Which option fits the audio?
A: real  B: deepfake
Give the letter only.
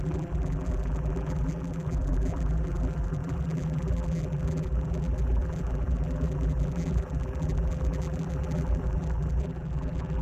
B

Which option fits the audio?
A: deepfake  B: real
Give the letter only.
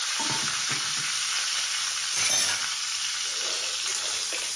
B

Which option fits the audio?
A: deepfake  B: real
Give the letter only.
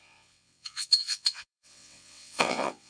A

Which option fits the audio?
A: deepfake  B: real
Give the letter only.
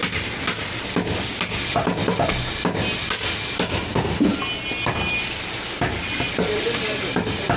B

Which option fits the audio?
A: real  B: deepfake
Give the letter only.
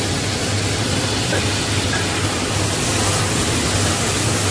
A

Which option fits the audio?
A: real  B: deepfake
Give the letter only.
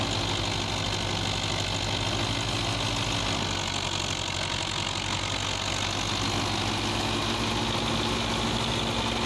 A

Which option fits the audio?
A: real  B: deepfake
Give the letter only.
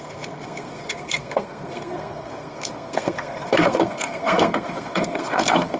B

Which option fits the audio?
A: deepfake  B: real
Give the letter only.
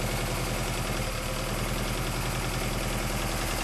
B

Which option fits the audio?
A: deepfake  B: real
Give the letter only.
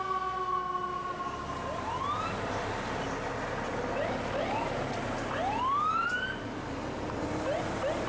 B